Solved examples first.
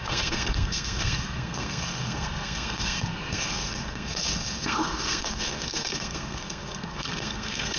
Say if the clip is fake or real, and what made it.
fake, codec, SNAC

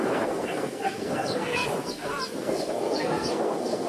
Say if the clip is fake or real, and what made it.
fake, codec, SNAC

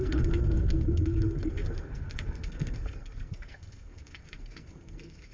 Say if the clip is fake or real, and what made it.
fake, codec, SNAC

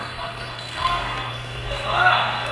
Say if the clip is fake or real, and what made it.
fake, codec, SNAC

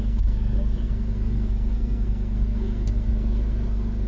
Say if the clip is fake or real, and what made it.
fake, codec, SNAC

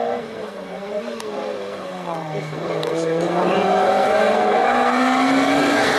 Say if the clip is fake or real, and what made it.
fake, codec, SNAC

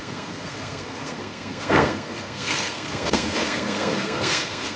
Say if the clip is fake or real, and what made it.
fake, codec, SNAC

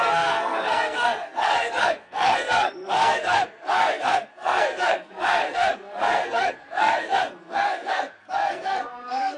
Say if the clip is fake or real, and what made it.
fake, codec, SNAC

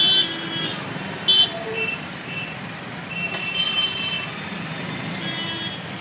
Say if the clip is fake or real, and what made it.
real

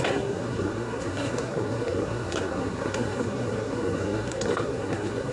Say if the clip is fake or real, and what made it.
fake, codec, SNAC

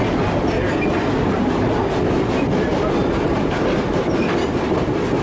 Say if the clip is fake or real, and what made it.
real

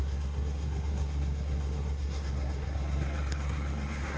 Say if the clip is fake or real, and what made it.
fake, codec, SNAC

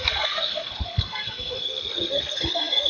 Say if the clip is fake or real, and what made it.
fake, codec, SNAC